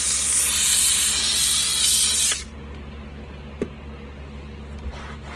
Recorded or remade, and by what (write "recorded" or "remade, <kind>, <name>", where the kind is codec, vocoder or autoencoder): recorded